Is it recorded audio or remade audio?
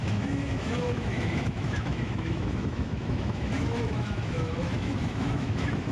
remade